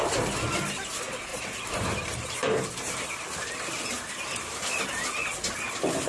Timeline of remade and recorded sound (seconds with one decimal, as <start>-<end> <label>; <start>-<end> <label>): 0.0-1.3 recorded; 1.3-2.9 remade; 2.9-6.1 recorded